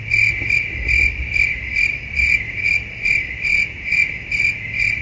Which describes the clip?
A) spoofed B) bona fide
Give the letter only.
B